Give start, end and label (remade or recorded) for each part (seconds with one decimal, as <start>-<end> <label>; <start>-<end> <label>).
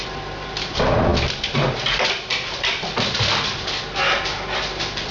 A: 0.0-5.1 recorded